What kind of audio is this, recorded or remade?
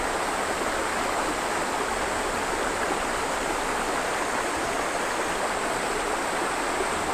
recorded